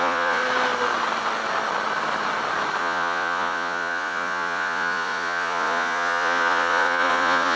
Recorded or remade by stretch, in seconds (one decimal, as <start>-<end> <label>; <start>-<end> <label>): 0.0-0.4 remade; 0.4-2.8 recorded; 2.8-7.6 remade